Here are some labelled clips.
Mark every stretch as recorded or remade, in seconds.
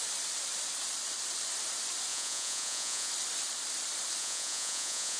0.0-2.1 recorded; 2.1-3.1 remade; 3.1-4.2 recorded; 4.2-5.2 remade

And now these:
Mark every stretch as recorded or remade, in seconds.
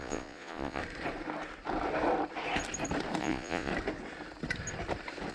0.0-0.8 remade; 0.8-3.2 recorded; 3.2-3.7 remade; 3.7-5.3 recorded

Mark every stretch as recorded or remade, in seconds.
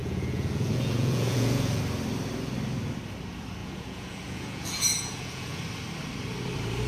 0.0-1.8 remade; 1.8-3.6 recorded; 3.6-5.6 remade; 5.6-6.9 recorded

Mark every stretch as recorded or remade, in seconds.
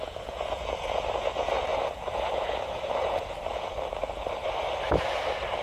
0.0-4.2 remade; 4.2-5.6 recorded